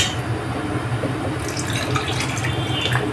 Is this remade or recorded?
recorded